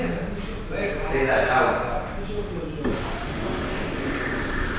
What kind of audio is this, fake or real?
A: real